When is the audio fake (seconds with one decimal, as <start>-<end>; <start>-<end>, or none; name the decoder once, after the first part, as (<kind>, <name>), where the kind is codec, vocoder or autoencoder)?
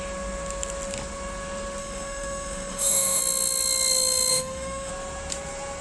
1.8-3.2 (autoencoder, DAC-VAE); 4.3-4.9